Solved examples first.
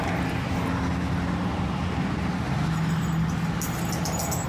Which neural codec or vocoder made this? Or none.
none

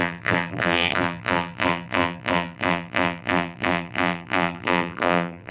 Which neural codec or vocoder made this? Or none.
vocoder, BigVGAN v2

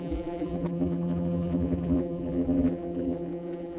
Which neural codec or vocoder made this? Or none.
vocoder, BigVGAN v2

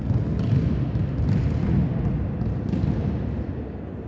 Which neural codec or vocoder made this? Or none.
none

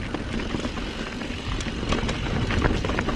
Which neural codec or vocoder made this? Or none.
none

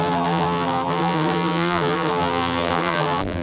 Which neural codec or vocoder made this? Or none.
vocoder, BigVGAN v2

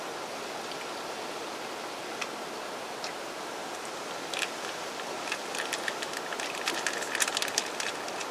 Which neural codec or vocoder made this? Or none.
none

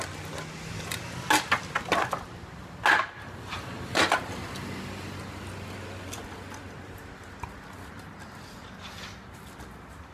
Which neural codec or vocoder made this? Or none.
none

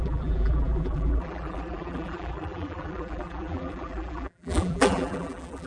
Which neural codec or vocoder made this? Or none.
vocoder, BigVGAN v2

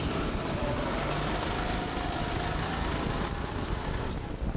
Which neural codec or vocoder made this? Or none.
none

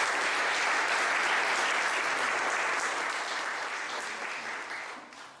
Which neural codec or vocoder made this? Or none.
none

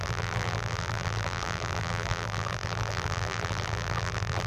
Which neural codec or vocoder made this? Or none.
vocoder, BigVGAN v2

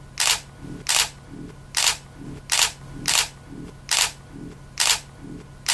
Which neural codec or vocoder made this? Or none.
none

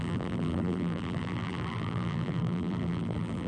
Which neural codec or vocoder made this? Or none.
vocoder, BigVGAN v2